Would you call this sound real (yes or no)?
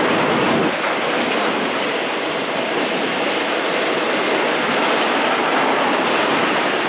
yes